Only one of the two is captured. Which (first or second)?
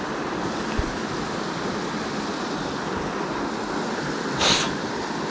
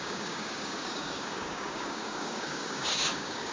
first